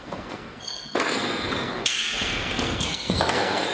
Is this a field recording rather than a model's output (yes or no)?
no